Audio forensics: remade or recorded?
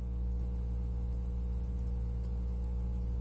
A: recorded